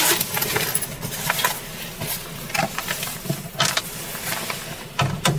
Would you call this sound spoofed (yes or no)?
no